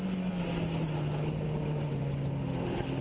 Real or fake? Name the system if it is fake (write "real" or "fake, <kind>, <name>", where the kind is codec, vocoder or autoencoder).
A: real